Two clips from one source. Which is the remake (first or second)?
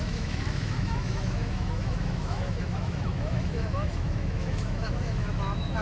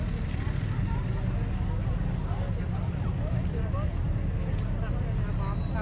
first